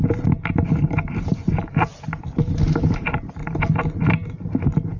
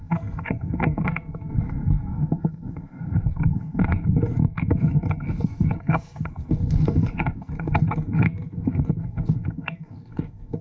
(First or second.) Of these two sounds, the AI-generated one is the second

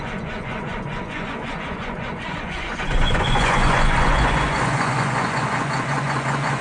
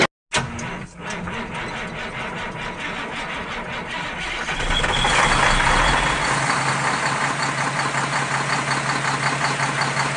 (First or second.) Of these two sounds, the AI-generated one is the first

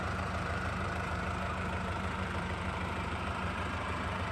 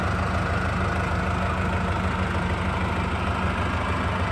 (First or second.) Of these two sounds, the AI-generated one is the first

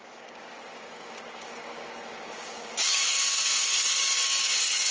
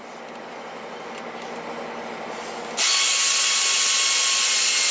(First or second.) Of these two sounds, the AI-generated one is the first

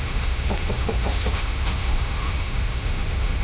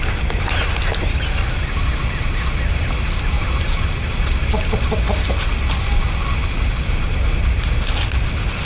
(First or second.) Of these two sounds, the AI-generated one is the first